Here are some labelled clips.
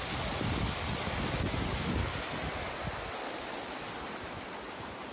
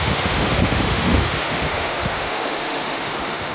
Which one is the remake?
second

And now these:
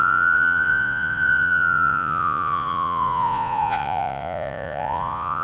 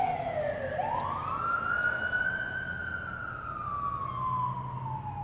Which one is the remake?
first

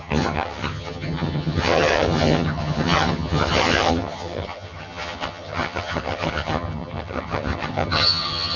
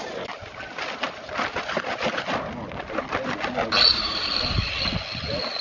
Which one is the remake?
first